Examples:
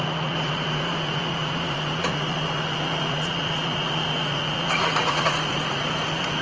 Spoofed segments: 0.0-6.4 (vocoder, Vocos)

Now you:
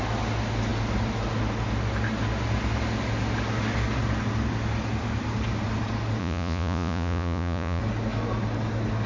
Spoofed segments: 6.2-7.8 (vocoder, Vocos)

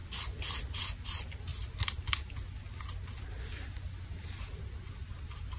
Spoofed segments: none

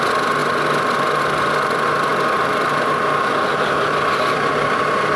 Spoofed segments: none

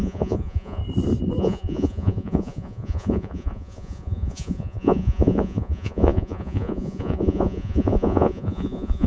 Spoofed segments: 0.0-0.8 (vocoder, Vocos); 1.4-9.1

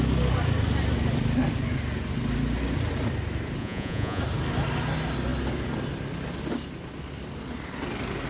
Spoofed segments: 3.6-4.2 (vocoder, Vocos)